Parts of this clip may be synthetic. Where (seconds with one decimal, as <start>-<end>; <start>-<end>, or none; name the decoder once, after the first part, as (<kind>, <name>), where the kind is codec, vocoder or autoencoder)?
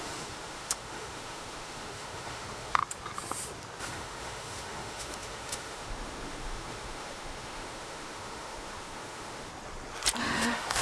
0.0-2.8 (autoencoder, DAC-VAE); 3.8-9.5; 10.2-10.8